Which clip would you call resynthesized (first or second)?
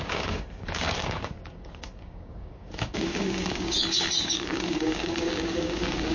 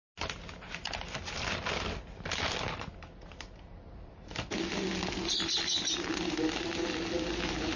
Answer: first